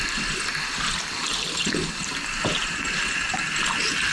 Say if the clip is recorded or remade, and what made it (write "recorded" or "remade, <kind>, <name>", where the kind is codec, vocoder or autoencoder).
recorded